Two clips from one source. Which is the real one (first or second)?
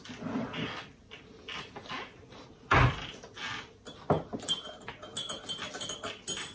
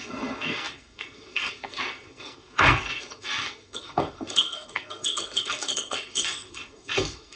first